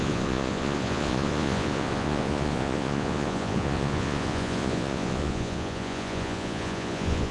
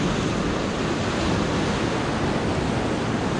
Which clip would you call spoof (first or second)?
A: first